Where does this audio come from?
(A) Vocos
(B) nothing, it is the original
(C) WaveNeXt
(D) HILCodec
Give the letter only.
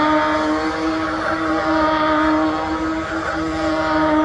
B